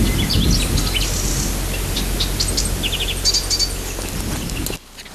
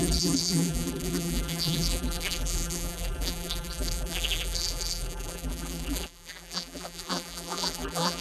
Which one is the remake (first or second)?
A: second